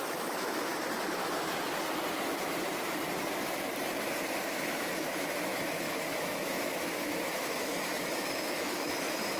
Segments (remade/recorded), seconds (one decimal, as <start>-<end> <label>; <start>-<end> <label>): 0.0-0.7 remade; 0.7-4.6 recorded; 4.6-9.4 remade